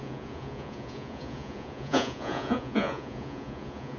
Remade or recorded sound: remade